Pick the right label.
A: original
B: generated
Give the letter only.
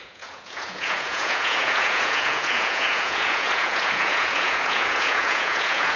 B